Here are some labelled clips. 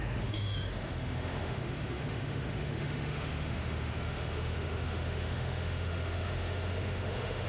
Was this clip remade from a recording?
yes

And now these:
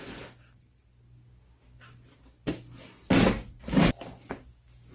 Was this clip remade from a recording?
no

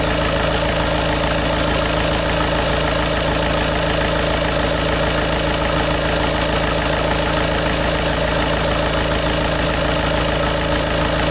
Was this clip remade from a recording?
no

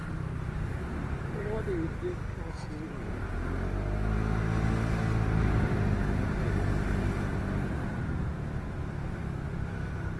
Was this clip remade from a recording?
no